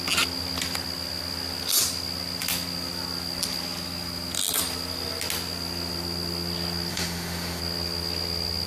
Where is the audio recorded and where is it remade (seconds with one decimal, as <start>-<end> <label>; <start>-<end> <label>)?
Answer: 0.0-6.9 recorded; 6.9-7.6 remade; 7.6-8.7 recorded